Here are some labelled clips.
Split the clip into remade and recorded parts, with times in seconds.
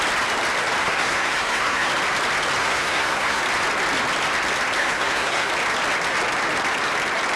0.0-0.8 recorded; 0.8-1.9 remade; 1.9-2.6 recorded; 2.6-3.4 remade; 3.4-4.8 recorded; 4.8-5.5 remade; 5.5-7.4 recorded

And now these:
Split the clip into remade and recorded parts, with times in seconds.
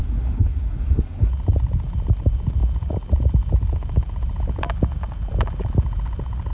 0.0-1.3 remade; 1.3-6.5 recorded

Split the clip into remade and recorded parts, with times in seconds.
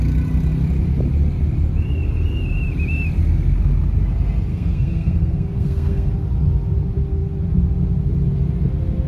0.0-4.5 recorded; 4.5-6.1 remade; 6.1-9.1 recorded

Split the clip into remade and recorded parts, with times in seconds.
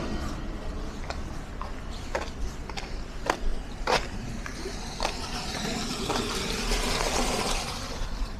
0.0-3.5 recorded; 3.5-8.4 remade